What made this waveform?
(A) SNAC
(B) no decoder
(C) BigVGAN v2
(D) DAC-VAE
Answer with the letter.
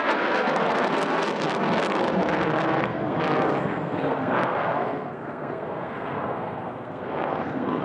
A